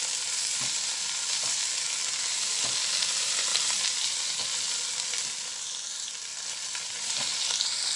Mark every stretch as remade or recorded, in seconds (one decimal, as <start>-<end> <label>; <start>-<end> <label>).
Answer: 0.0-8.0 recorded